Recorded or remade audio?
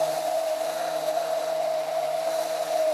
remade